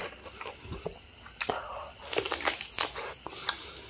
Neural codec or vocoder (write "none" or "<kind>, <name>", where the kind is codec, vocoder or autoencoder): none